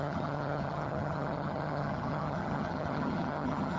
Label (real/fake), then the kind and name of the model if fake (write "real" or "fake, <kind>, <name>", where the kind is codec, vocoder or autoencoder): fake, vocoder, HiFi-GAN